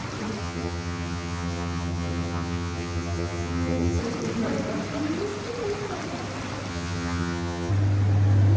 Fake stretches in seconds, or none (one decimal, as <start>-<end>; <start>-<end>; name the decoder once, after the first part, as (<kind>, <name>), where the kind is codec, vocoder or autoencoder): 0.4-4.0 (vocoder, HiFi-GAN); 6.7-7.7